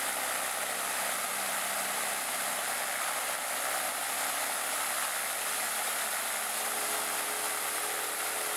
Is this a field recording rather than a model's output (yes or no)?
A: yes